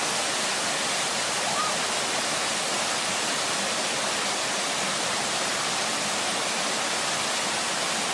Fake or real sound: real